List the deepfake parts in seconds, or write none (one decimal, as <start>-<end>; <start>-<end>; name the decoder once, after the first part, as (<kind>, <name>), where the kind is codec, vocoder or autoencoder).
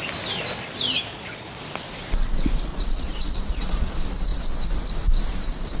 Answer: 1.1-1.6 (vocoder, Vocos); 2.7-3.9